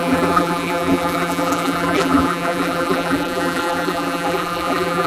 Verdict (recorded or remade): remade